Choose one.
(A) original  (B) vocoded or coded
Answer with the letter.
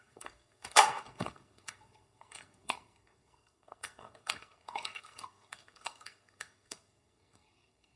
B